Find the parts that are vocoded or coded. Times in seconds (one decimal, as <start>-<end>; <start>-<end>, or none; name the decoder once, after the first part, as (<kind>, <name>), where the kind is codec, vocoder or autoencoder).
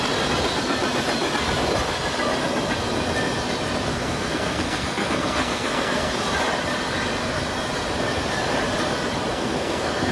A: 3.9-6.1 (codec, SNAC); 9.3-10.1